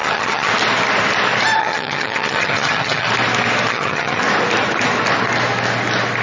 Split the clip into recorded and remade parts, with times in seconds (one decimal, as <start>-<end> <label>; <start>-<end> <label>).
0.0-0.5 remade; 0.5-1.6 recorded; 1.6-3.1 remade; 3.1-3.7 recorded; 3.7-4.2 remade; 4.2-6.2 recorded